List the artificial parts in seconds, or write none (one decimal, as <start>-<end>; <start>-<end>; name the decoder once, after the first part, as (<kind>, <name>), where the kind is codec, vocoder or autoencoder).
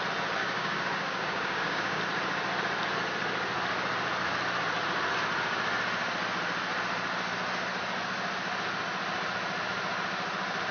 0.4-2.0 (codec, DAC)